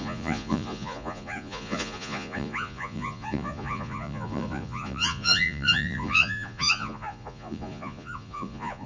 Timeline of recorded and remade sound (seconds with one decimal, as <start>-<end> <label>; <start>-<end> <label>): 0.0-8.9 remade